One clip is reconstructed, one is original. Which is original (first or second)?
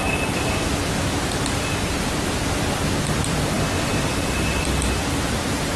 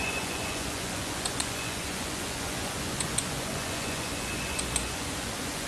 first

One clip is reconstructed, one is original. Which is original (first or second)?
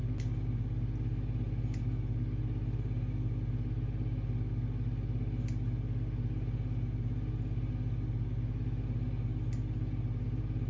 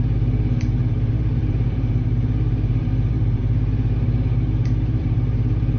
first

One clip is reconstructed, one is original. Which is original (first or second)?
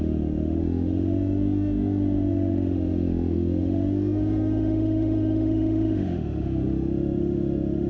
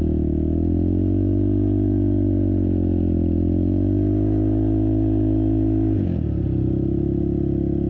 second